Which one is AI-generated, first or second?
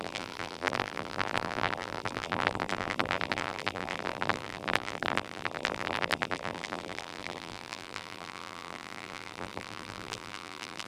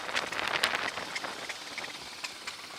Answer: first